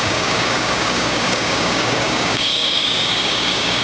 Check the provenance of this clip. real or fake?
fake